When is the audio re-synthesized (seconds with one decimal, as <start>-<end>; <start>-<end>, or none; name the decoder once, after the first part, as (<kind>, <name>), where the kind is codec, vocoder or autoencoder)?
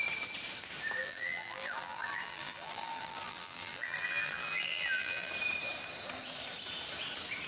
1.0-5.3 (vocoder, BigVGAN v2)